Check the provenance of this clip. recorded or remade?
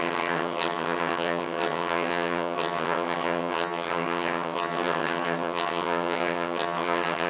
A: remade